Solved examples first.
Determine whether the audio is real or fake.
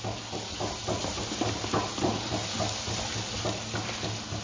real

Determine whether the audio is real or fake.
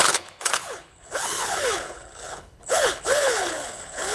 fake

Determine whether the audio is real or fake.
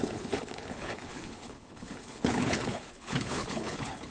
fake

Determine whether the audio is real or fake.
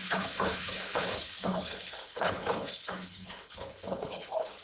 fake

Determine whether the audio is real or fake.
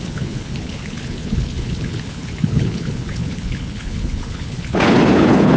fake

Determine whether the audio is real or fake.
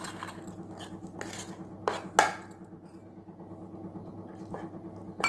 real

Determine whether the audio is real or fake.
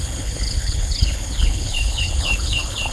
fake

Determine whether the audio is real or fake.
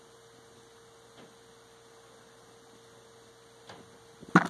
real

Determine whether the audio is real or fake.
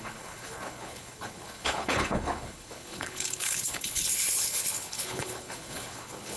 fake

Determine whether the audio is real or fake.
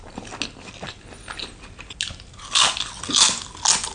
real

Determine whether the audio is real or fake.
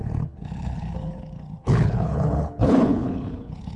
fake